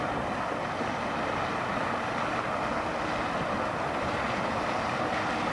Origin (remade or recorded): recorded